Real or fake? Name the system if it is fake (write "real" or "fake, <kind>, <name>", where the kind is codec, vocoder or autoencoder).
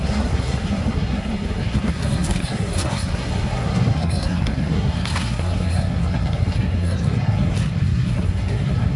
fake, codec, SNAC